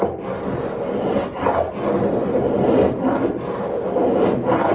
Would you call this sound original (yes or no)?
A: yes